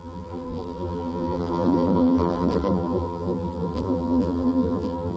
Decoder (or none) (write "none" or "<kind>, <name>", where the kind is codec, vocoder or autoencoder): vocoder, BigVGAN v2